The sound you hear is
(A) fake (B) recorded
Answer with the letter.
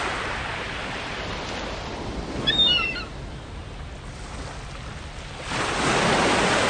B